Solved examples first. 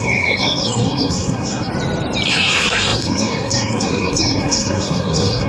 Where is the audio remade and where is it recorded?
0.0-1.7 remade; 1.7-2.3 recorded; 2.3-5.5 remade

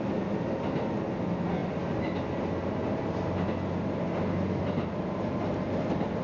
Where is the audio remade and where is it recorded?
0.0-6.2 recorded

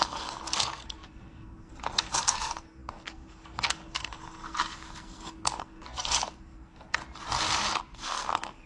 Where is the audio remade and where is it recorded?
0.0-7.0 remade; 7.0-7.8 recorded; 7.8-8.7 remade

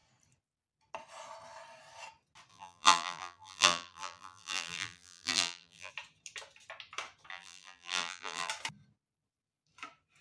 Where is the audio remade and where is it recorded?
0.0-2.5 recorded; 2.5-5.9 remade; 5.9-7.3 recorded; 7.3-8.5 remade; 8.5-10.2 recorded

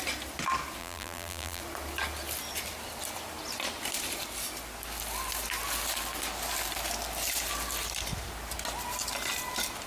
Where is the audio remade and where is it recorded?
0.0-0.8 recorded; 0.8-1.6 remade; 1.6-9.9 recorded

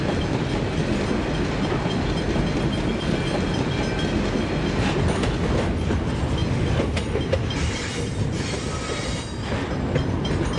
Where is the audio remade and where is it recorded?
0.0-10.6 recorded

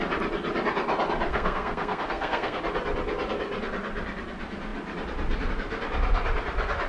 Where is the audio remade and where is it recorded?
0.0-1.3 recorded; 1.3-2.6 remade; 2.6-6.9 recorded